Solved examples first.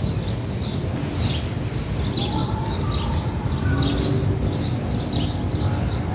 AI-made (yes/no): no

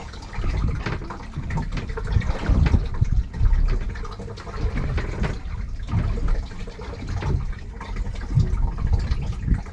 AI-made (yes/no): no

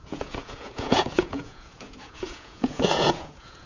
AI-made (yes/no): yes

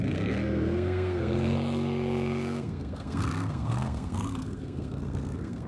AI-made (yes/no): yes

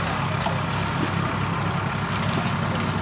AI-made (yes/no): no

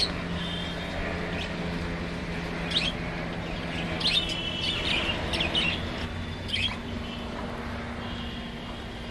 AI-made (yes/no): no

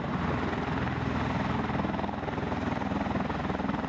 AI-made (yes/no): no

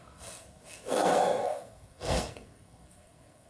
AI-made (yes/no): yes